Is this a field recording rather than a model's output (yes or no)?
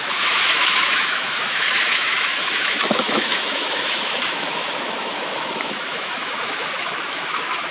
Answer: no